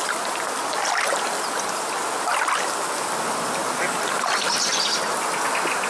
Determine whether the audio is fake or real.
real